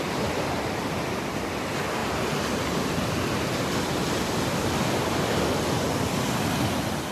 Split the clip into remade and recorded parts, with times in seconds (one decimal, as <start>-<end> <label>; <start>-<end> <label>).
0.0-7.1 recorded